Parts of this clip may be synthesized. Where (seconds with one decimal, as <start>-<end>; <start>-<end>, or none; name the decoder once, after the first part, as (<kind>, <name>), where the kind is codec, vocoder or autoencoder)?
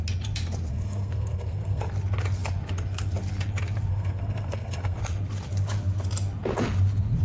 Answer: 0.7-1.9 (codec, SNAC); 3.9-5.0